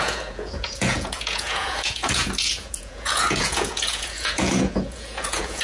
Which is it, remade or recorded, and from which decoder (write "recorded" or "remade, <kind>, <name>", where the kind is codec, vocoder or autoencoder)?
remade, vocoder, Vocos